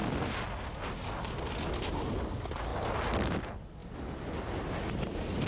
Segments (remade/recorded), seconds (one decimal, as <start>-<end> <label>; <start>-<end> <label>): 0.0-5.5 recorded